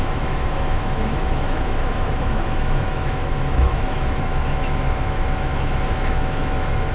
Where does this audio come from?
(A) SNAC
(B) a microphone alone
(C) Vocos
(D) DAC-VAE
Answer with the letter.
D